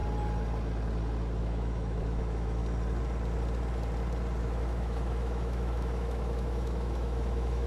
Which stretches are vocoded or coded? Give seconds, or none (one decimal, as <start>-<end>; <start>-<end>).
1.4-2.6; 4.4-7.7